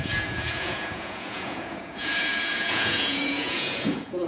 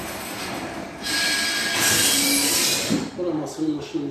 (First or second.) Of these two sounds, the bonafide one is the second